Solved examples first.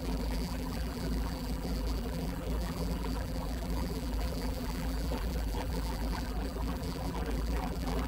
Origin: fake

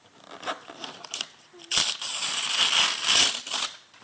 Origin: fake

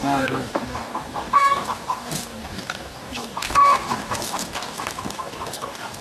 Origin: fake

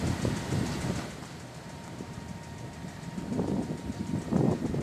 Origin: real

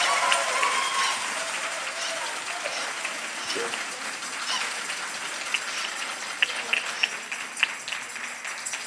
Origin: real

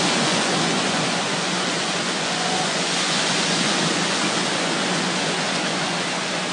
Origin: fake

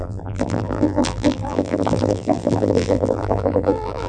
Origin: fake